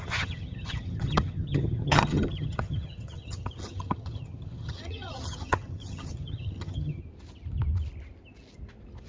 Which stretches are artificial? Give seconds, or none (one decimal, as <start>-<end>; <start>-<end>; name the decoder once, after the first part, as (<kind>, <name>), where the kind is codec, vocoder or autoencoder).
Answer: 0.0-7.0 (vocoder, HiFi-GAN)